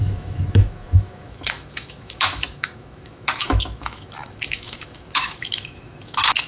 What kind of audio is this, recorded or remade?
remade